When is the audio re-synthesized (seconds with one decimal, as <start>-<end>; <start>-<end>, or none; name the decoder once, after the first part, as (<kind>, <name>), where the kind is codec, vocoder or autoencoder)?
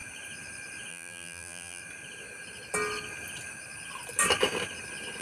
0.9-1.8 (vocoder, BigVGAN v2)